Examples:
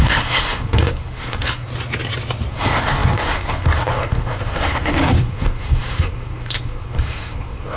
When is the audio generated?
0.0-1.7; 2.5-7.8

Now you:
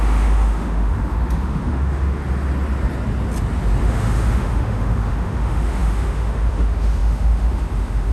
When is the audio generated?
0.0-2.2; 3.8-8.1

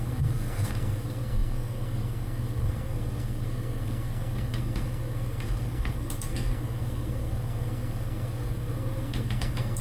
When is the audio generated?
0.0-9.8

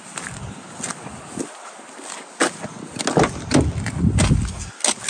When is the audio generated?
none